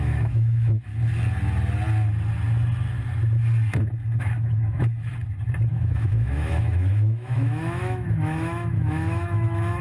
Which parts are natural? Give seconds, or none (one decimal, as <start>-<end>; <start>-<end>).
0.9-4.2; 5.1-5.7